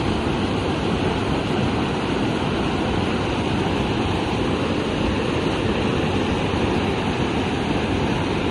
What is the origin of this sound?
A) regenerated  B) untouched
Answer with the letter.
B